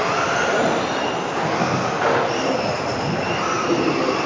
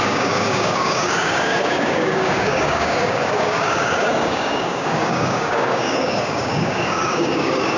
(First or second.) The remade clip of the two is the second